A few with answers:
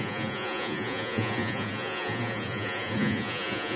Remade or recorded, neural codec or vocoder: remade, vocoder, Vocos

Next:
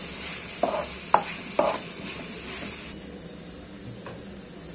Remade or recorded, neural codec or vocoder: recorded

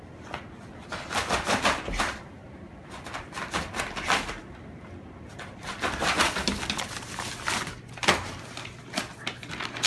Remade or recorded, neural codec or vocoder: recorded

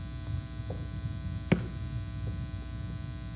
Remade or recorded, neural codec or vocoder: recorded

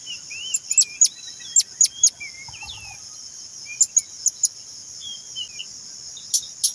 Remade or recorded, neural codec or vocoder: recorded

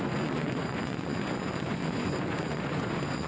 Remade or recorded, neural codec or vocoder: remade, vocoder, Vocos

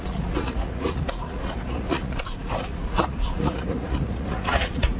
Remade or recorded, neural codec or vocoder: remade, vocoder, Vocos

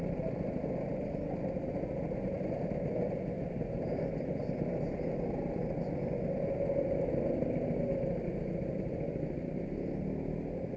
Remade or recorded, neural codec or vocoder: recorded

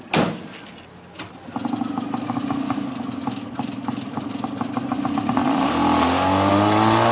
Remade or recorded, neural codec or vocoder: recorded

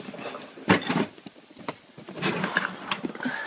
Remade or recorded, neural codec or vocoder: recorded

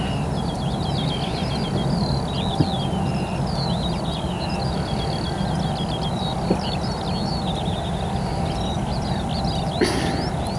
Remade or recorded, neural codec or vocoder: recorded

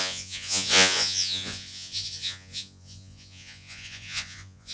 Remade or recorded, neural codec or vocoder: remade, vocoder, Vocos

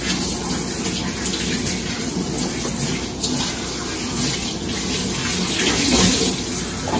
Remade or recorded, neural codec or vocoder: recorded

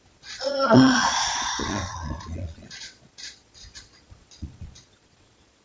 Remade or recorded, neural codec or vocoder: remade, vocoder, Vocos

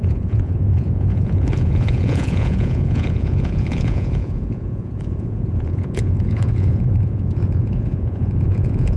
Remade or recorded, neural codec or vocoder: remade, vocoder, Vocos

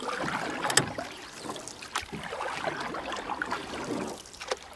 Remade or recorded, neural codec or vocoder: recorded